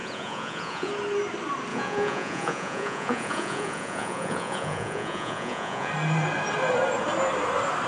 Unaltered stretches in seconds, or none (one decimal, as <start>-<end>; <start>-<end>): 0.9-1.7; 5.9-7.9